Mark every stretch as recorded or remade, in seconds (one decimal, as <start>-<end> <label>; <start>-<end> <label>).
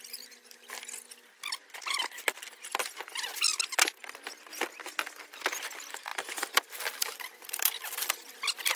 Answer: 0.0-6.1 recorded; 6.1-8.0 remade; 8.0-8.8 recorded